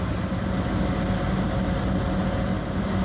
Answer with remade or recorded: recorded